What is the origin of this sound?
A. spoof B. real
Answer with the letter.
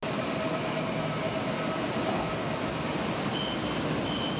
B